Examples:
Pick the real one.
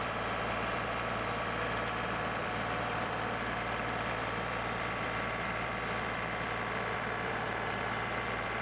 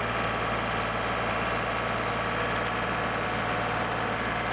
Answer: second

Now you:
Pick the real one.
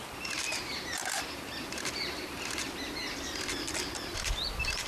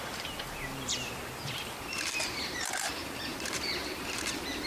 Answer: first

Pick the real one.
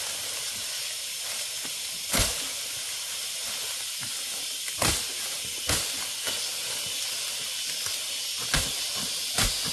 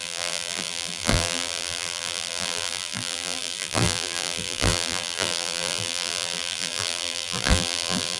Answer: first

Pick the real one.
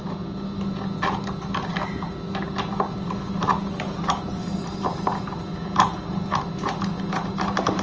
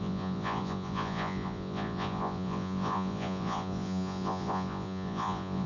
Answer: first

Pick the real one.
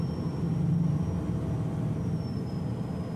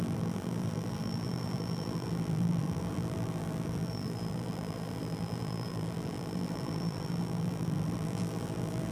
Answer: first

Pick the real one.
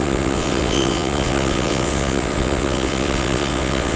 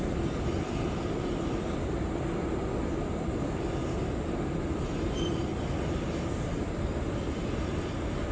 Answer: second